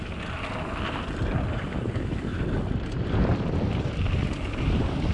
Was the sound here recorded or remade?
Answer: recorded